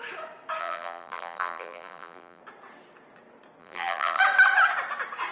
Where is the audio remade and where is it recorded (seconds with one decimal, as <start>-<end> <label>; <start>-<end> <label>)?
0.0-0.6 recorded; 0.6-2.4 remade; 2.4-3.6 recorded; 3.6-4.2 remade; 4.2-5.3 recorded